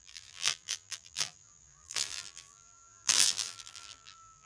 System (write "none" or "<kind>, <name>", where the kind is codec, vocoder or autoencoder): vocoder, BigVGAN v2